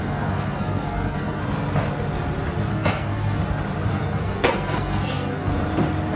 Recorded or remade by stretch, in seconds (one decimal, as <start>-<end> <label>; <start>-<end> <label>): 0.0-1.4 remade; 1.4-2.7 recorded; 2.7-3.4 remade; 3.4-3.9 recorded; 3.9-5.5 remade; 5.5-6.2 recorded